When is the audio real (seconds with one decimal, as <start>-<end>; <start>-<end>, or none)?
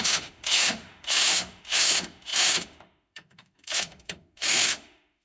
none